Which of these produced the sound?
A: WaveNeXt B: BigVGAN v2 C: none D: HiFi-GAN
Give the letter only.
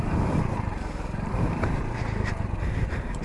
B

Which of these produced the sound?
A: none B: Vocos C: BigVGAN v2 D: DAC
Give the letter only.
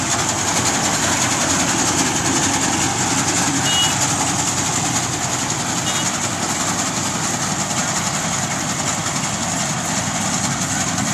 A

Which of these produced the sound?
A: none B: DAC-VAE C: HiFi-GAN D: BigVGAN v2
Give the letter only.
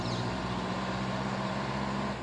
D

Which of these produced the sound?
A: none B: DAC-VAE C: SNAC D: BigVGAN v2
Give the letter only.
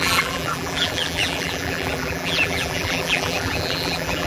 D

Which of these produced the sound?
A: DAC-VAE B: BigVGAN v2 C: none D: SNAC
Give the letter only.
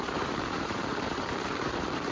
B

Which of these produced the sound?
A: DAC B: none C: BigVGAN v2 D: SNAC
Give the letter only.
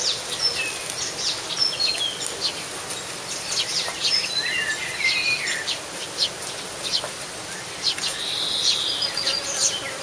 B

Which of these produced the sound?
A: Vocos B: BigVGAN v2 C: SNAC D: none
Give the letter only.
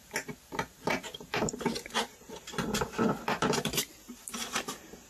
B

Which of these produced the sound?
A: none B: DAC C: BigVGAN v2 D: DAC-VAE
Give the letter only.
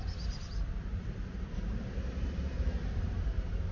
C